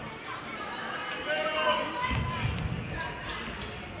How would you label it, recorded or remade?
recorded